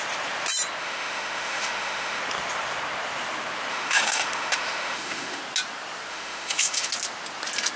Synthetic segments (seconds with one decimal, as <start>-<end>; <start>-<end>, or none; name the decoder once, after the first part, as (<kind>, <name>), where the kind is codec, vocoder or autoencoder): 0.8-2.2 (autoencoder, DAC-VAE); 3.7-5.4; 6.1-6.9